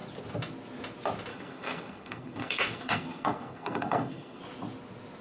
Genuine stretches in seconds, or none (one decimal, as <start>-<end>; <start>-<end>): 0.0-1.3; 4.4-5.2